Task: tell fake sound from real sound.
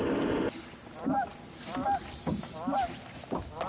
real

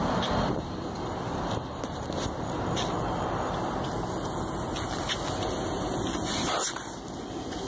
real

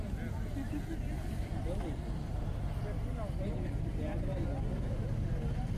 real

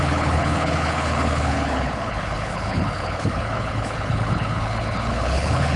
fake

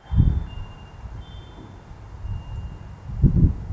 real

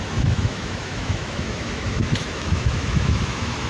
fake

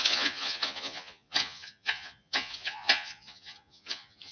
fake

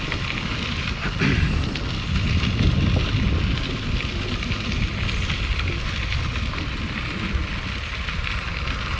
real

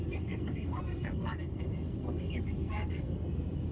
fake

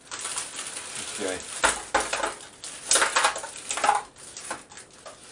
real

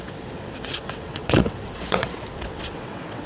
fake